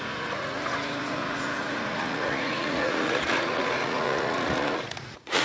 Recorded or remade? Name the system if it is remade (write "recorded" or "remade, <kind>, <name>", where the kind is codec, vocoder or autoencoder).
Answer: remade, vocoder, Vocos